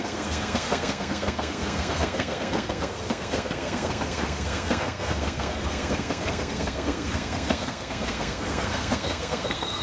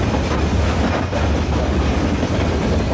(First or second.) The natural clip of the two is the second